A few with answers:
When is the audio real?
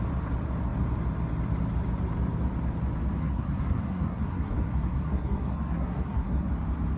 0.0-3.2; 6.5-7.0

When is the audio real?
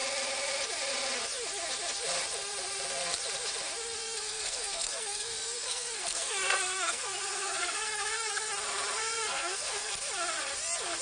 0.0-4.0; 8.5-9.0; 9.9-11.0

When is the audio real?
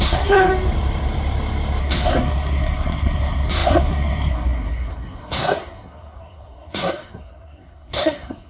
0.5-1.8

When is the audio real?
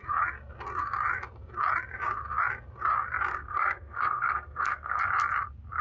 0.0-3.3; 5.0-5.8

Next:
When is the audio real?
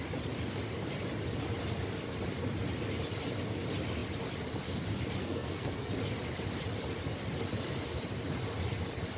0.0-5.2; 5.9-9.2